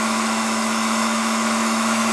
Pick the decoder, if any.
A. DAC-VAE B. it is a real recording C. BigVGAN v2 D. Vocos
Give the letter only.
A